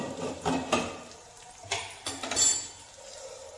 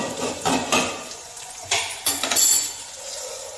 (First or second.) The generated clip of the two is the second